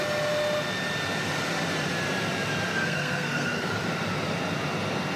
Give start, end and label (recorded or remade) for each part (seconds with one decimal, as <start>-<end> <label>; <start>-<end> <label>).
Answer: 0.0-2.7 recorded; 2.7-3.7 remade; 3.7-5.2 recorded